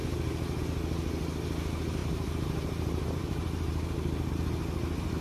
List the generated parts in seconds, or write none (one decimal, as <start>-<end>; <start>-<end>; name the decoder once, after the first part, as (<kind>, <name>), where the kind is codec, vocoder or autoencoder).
2.0-4.3 (vocoder, BigVGAN v2)